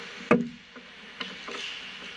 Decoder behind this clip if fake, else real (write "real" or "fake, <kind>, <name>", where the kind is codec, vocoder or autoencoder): real